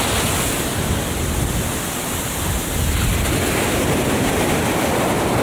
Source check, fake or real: real